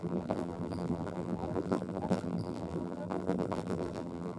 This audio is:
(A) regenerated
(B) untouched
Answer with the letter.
A